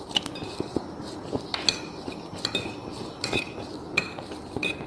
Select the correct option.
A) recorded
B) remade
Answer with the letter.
A